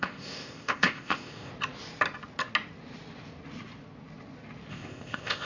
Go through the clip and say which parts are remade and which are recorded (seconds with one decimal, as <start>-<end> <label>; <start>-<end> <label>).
0.0-1.5 remade; 1.5-4.7 recorded; 4.7-5.4 remade